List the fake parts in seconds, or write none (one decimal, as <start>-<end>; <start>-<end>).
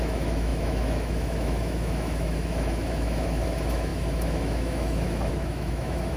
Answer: 0.0-6.2